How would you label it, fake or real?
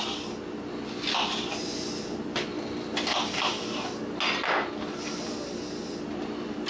real